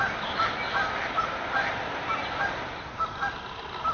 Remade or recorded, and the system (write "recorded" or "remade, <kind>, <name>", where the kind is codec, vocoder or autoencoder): recorded